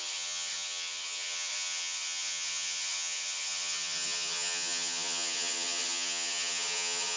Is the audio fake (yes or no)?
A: yes